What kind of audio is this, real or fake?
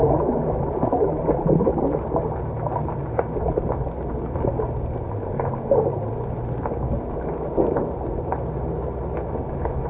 real